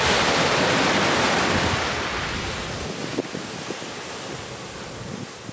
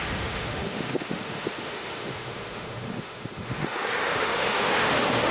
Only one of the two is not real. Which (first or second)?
second